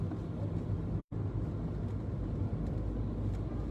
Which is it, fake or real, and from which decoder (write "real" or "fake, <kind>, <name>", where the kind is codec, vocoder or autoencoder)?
real